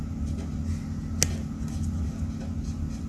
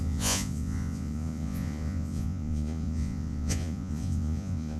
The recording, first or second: first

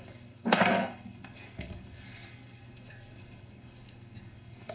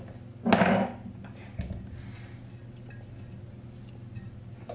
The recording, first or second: second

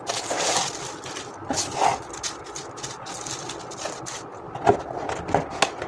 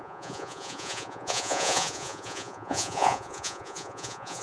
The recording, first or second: first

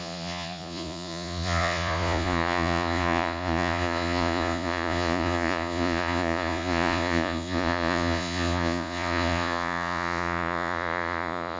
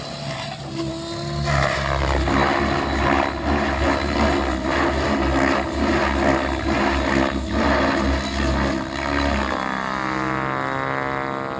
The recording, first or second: second